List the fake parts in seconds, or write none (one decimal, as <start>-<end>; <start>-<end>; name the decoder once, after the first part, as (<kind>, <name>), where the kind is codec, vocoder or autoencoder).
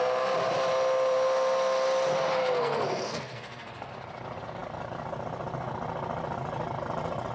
2.4-3.9 (codec, SNAC)